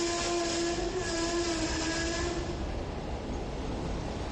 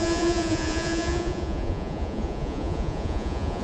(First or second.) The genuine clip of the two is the first